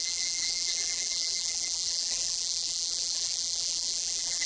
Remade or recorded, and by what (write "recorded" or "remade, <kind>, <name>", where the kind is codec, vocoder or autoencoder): remade, vocoder, BigVGAN v2